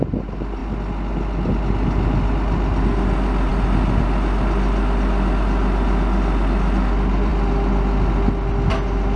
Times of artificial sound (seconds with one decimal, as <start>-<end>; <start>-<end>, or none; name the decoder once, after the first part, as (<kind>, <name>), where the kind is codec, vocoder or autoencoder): none